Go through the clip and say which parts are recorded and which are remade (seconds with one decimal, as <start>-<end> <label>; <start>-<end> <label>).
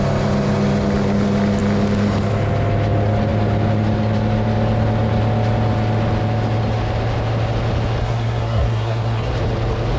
0.0-8.0 recorded; 8.0-9.3 remade; 9.3-10.0 recorded